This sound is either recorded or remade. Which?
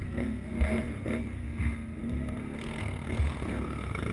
remade